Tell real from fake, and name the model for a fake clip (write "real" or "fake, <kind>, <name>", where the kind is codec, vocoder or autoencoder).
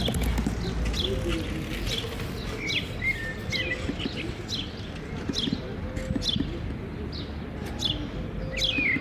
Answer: real